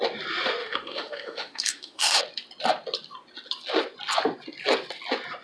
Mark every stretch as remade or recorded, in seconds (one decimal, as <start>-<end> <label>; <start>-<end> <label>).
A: 0.0-0.6 recorded; 0.6-2.2 remade; 2.2-5.4 recorded